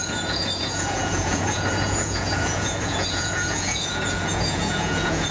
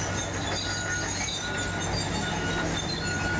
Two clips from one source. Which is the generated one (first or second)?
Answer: first